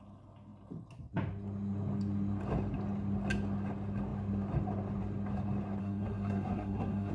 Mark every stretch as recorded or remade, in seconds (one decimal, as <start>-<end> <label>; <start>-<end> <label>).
0.0-5.8 recorded; 5.8-7.1 remade